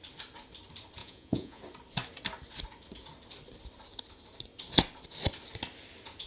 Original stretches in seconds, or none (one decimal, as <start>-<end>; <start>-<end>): 0.0-1.0; 1.6-6.3